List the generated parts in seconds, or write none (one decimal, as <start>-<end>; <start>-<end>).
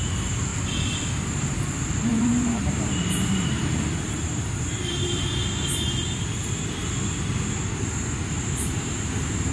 0.0-0.5; 1.3-5.4; 8.7-9.5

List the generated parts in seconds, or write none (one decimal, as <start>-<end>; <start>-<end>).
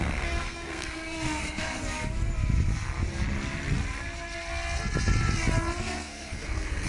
0.0-1.8; 5.8-6.9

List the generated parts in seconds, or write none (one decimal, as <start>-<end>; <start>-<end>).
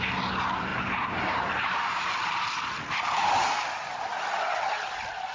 0.7-3.3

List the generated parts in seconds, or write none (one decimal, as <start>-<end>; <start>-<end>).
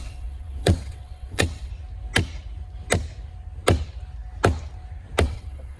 0.0-1.7; 5.2-5.8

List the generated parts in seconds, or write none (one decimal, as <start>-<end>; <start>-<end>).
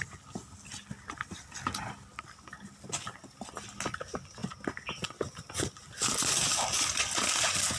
none